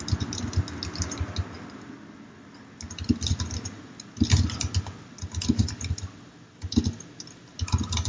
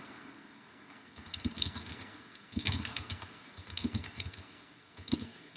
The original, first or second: first